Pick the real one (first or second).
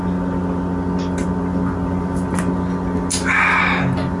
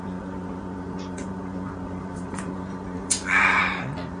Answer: first